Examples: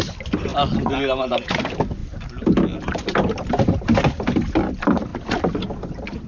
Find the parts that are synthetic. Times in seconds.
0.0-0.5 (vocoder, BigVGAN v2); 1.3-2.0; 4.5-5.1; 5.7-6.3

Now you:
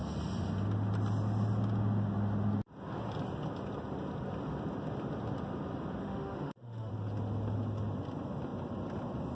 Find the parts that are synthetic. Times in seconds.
6.0-6.9 (autoencoder, DAC-VAE)

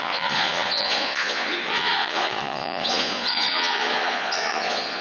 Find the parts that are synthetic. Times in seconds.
0.0-5.0 (vocoder, Vocos)

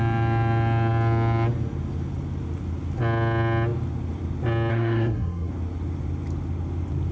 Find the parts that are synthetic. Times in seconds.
4.7-5.5 (codec, SNAC)

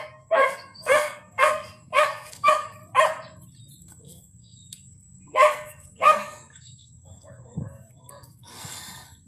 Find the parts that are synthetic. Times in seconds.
0.0-2.8 (codec, SNAC); 3.8-9.3

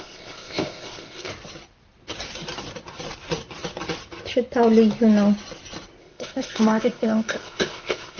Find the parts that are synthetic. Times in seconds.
0.0-1.3 (codec, ZipCodec); 6.0-8.2

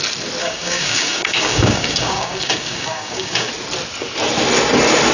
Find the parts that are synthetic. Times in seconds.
0.4-3.5 (codec, DAC)